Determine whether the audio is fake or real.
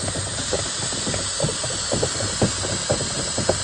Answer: real